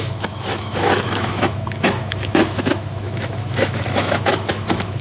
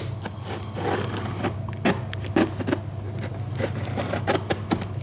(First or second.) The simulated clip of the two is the first